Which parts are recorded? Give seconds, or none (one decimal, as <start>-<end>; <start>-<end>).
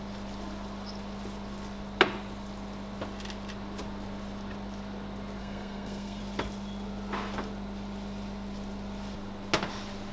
0.0-5.4; 6.2-10.1